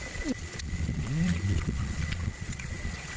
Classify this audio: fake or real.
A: fake